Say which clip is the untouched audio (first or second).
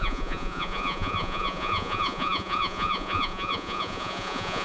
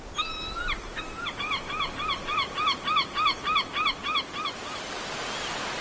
second